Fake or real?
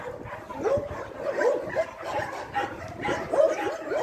real